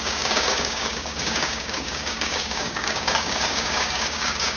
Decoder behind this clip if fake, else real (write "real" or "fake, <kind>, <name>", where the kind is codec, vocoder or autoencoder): fake, codec, DAC